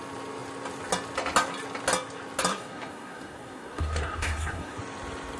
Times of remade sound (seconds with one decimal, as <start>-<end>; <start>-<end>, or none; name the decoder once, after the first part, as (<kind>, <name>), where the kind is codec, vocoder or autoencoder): 2.5-4.8 (codec, SNAC)